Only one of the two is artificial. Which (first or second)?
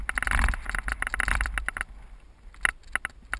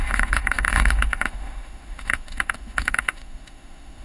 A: second